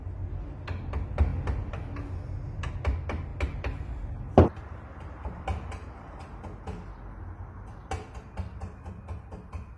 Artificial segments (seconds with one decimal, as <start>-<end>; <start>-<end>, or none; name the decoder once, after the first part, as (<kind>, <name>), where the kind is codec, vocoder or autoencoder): none